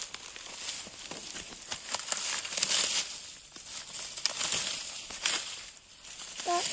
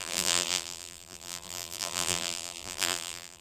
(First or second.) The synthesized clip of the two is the second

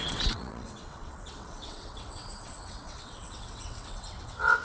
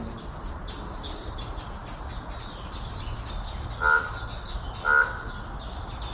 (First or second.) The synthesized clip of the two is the first